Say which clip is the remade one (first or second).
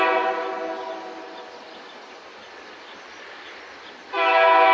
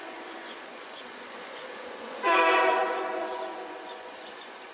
second